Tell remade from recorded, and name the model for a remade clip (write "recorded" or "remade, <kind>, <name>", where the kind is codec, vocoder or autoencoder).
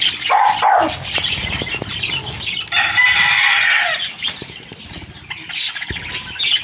recorded